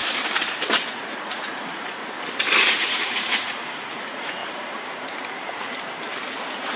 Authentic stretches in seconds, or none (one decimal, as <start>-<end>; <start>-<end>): 0.0-0.9; 2.0-2.7; 4.4-6.8